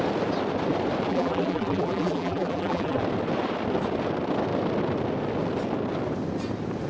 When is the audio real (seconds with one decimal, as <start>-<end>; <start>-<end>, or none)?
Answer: 0.0-1.1; 3.0-6.9